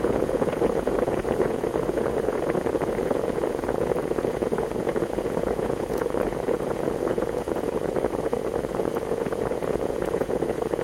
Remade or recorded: remade